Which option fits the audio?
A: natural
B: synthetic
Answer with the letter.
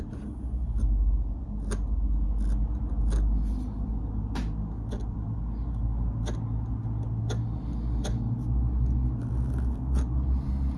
A